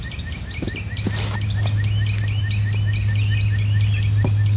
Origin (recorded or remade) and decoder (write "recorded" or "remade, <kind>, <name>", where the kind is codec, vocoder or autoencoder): recorded